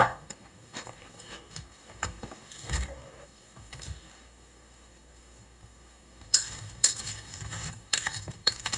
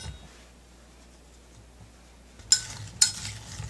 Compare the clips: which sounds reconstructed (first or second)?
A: first